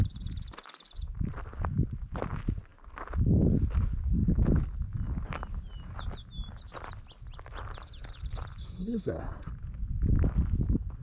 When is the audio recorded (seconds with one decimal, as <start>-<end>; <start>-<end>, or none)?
0.0-8.6; 9.5-11.0